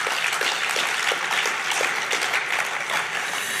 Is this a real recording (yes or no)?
yes